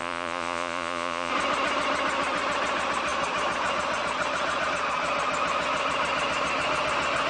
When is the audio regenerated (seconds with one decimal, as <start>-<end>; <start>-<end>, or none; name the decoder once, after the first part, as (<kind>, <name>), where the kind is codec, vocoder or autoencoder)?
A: 0.0-1.3 (vocoder, Vocos)